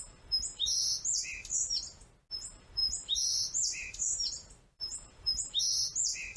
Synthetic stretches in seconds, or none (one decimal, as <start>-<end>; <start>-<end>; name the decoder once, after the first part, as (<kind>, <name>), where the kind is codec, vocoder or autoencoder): 2.8-5.6 (vocoder, BigVGAN v2)